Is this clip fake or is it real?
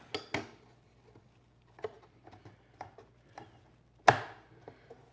real